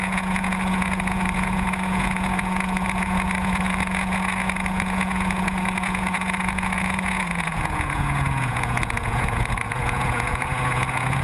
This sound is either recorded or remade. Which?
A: remade